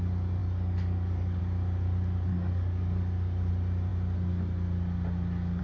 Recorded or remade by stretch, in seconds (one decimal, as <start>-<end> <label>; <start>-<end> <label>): 0.0-0.4 recorded; 0.4-1.4 remade; 1.4-2.3 recorded; 2.3-3.5 remade; 3.5-5.6 recorded